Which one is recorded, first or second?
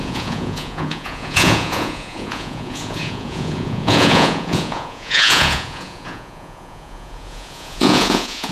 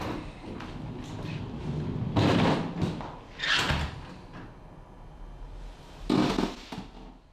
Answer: second